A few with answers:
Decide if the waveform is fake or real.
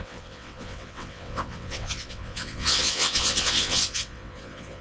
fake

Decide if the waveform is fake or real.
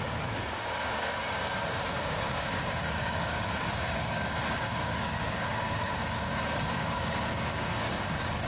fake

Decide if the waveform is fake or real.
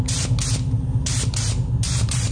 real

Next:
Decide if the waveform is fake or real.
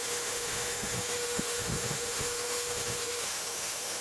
fake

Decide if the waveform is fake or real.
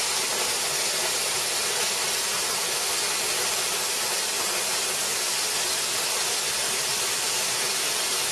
real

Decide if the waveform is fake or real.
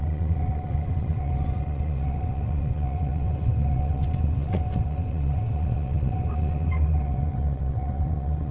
fake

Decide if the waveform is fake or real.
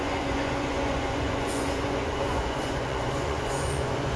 fake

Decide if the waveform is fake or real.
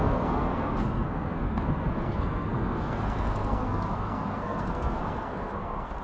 fake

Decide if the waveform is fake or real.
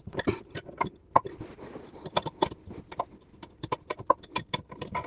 real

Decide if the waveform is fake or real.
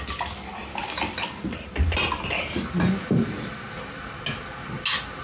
real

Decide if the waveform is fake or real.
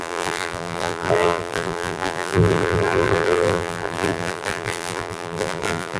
fake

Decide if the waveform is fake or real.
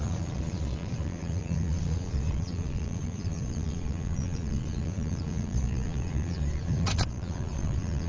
fake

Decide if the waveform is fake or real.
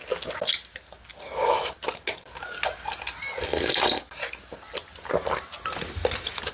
real